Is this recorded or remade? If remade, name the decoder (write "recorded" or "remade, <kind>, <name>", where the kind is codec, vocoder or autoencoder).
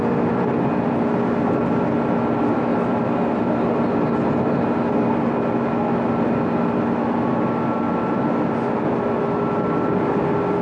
recorded